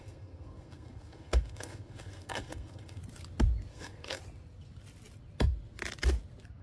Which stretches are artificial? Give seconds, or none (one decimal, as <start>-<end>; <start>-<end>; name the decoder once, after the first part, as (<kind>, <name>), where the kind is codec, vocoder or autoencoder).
0.0-3.0 (codec, SNAC); 3.7-4.2